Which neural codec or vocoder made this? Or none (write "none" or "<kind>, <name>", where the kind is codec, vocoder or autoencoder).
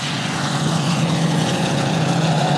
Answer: vocoder, Vocos